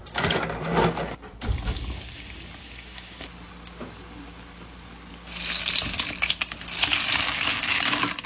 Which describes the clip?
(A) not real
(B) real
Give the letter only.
B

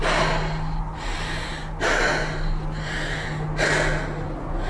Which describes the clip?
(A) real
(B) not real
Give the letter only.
A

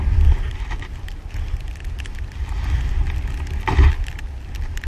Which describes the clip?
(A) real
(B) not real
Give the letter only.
A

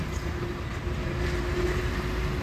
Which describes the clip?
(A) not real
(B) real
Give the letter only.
B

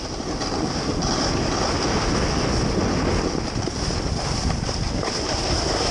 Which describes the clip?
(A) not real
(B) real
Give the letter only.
B